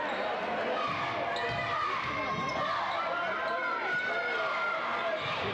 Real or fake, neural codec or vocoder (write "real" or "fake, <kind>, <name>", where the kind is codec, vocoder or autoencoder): real